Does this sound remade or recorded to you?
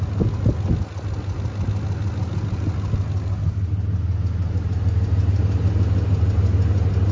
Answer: recorded